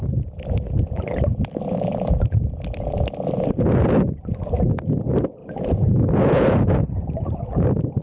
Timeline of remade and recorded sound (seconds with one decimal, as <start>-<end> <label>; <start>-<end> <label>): 0.0-5.4 recorded; 5.4-7.0 remade; 7.0-8.0 recorded